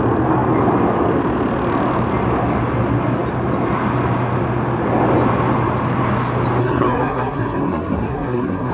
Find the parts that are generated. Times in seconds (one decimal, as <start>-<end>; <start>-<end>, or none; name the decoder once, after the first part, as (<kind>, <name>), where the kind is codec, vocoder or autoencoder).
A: 6.6-8.7 (codec, SNAC)